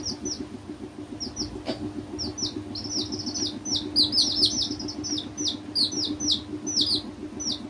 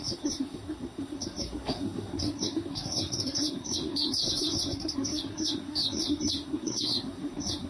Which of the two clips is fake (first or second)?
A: second